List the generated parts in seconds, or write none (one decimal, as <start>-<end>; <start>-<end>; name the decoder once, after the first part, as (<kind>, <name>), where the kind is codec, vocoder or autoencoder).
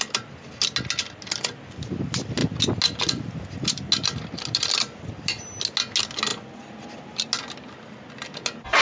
none